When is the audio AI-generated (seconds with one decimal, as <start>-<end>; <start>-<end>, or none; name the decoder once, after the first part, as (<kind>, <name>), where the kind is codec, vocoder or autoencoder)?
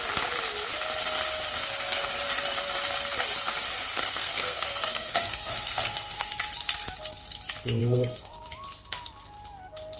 3.9-6.3 (codec, SNAC); 7.8-8.4